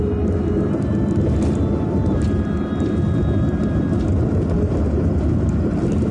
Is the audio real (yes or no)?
yes